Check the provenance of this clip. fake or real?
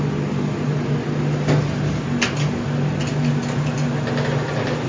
real